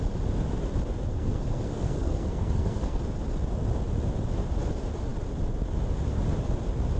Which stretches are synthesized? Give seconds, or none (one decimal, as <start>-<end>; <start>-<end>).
1.1-3.0